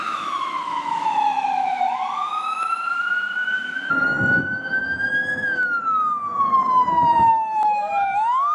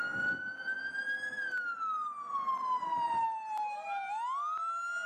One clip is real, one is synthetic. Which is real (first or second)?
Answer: second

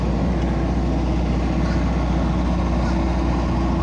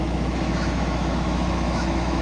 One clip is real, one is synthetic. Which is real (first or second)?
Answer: first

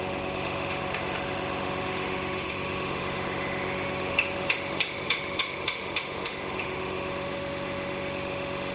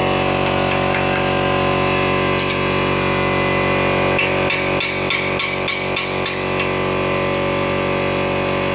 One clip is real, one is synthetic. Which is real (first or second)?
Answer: second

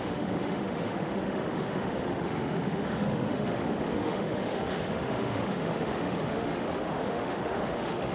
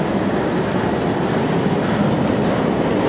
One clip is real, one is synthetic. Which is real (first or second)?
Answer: second